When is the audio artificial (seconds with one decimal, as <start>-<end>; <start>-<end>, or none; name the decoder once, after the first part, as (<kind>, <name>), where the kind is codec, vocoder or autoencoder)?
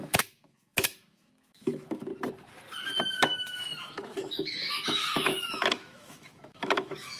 0.0-2.1 (autoencoder, DAC-VAE); 3.1-7.2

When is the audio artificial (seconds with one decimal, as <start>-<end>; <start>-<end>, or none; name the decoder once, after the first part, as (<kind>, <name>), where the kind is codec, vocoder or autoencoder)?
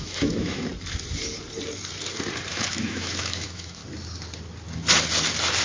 0.0-0.7 (autoencoder, DAC-VAE); 2.5-3.8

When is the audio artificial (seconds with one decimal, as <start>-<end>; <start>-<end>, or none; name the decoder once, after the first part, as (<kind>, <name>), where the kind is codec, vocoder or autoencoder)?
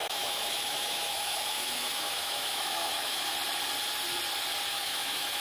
0.0-3.3 (autoencoder, DAC-VAE); 4.7-5.4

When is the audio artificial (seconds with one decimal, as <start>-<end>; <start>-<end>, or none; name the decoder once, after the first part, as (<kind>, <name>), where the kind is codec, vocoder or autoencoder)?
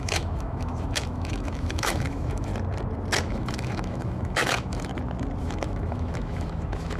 0.0-2.5 (autoencoder, DAC-VAE); 3.2-4.9; 5.4-7.0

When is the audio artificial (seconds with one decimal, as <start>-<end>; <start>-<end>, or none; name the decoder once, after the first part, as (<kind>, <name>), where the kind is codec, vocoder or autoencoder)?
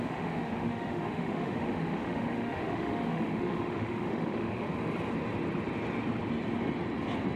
0.0-4.7 (autoencoder, DAC-VAE)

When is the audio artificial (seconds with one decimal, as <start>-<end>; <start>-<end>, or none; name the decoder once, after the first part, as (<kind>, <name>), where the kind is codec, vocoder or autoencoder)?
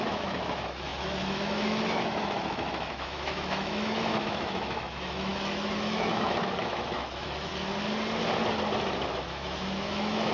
0.0-7.5 (autoencoder, DAC-VAE); 9.1-10.3